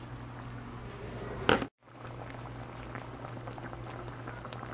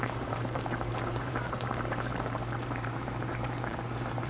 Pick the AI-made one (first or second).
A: second